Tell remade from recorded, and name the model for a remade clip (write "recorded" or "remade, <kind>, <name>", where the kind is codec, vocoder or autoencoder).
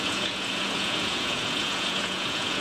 remade, vocoder, Vocos